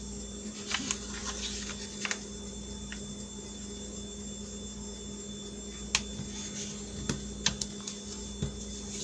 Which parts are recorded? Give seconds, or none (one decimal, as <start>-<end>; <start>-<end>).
0.0-9.0